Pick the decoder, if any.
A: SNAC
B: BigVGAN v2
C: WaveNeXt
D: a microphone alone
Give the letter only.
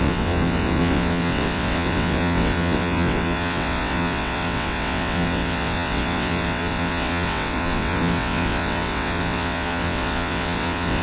C